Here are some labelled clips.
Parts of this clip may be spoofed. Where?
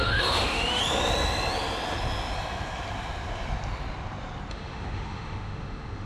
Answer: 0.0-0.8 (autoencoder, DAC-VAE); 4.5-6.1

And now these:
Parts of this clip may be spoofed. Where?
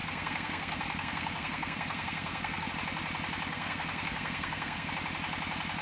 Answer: 0.0-2.7 (codec, SNAC); 3.5-4.9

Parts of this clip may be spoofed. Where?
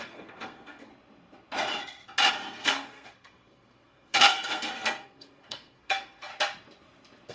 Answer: 0.0-0.9 (codec, SNAC); 2.3-6.3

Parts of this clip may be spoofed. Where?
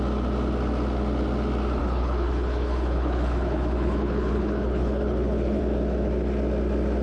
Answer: 1.8-5.6 (codec, HILCodec)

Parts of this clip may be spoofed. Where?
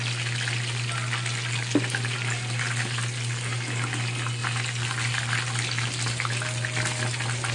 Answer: none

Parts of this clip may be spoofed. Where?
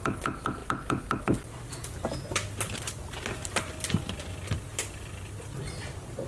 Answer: 0.0-0.6 (vocoder, BigVGAN v2); 1.2-2.4; 3.6-6.3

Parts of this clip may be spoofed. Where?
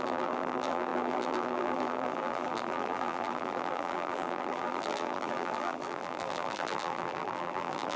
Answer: 0.0-8.0 (vocoder, BigVGAN v2)